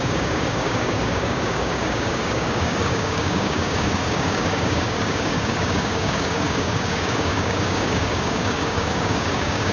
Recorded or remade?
remade